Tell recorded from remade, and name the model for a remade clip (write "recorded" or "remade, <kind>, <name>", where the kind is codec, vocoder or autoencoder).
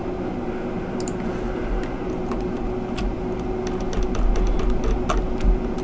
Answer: recorded